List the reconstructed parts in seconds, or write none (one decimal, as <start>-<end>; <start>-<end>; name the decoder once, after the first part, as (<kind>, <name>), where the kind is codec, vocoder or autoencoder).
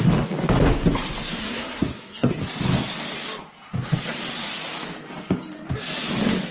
1.4-2.3 (codec, SNAC)